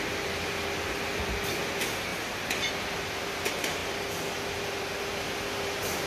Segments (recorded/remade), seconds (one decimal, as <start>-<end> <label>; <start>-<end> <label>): 0.0-6.1 recorded